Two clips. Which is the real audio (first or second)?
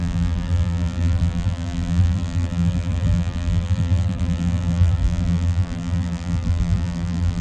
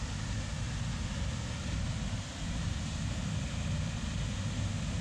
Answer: second